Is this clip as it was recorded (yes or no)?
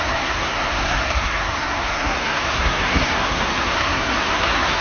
no